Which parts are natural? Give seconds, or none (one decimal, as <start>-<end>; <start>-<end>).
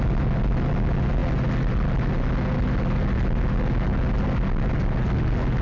0.0-5.6